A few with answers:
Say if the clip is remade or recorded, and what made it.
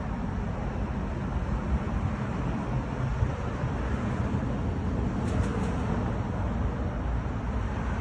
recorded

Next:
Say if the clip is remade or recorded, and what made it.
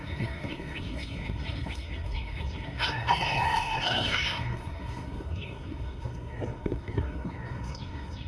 remade, codec, SNAC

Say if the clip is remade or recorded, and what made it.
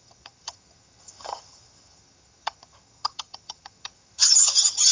remade, vocoder, HiFi-GAN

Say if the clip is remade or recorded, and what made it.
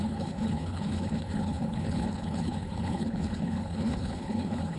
remade, codec, HILCodec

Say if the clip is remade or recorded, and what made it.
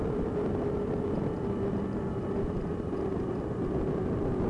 remade, vocoder, BigVGAN v2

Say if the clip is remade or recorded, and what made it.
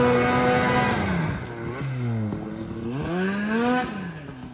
recorded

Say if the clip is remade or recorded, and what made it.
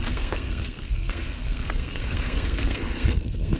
remade, codec, SNAC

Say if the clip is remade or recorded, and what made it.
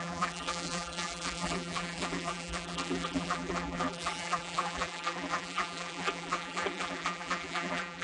remade, vocoder, BigVGAN v2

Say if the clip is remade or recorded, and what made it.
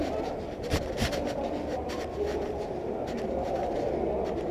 recorded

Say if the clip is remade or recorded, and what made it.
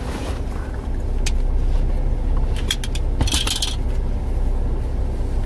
recorded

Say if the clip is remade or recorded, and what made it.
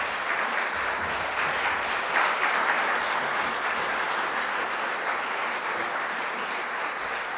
recorded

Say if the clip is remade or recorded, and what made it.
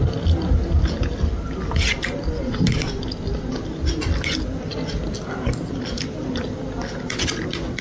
recorded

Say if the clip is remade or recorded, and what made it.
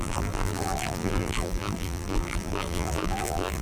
remade, vocoder, BigVGAN v2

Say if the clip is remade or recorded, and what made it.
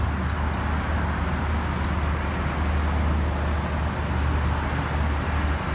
recorded